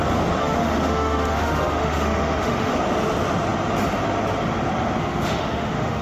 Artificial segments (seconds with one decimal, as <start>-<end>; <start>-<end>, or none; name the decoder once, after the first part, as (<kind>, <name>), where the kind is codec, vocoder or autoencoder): 0.4-2.7 (autoencoder, DAC-VAE); 5.0-6.0